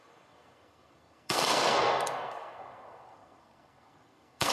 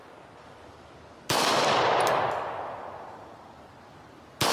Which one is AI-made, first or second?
first